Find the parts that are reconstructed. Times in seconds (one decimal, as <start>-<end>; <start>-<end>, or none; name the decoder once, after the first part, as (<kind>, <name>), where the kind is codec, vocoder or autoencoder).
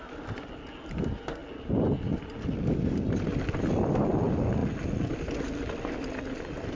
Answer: none